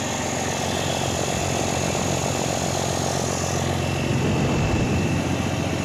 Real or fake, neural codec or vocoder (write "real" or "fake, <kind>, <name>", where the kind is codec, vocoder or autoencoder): real